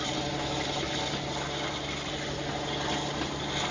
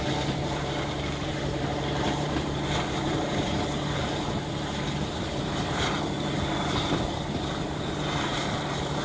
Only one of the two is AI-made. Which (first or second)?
second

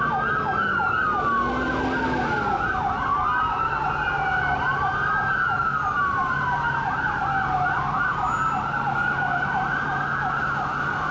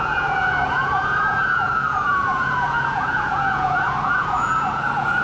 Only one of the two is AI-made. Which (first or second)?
second